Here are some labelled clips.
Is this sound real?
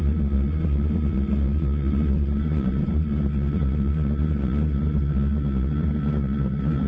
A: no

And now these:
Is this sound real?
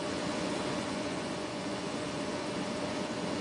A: no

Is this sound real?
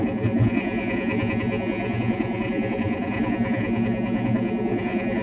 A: no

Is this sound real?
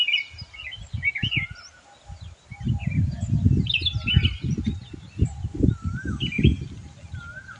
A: yes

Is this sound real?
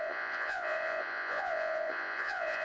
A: no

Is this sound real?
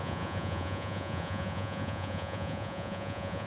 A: no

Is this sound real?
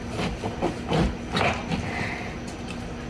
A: yes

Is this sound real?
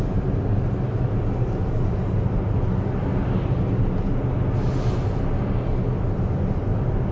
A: yes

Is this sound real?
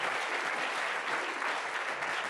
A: yes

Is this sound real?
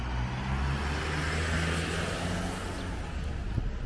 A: yes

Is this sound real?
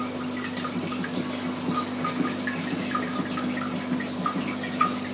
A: yes